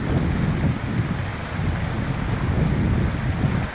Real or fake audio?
real